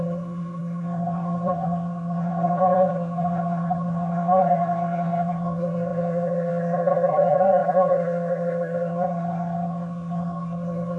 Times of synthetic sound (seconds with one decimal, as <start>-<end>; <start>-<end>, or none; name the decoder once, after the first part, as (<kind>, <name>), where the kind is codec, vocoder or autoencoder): 0.0-11.0 (codec, SNAC)